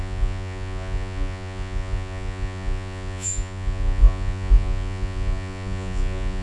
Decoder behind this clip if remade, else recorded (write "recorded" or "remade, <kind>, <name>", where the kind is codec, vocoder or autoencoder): remade, vocoder, Vocos